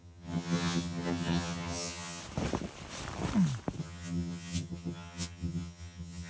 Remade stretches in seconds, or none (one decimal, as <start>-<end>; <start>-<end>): 0.0-2.2; 3.8-6.3